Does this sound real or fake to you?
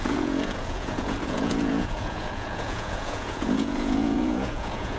fake